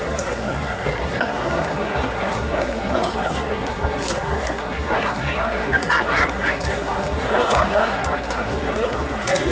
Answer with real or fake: fake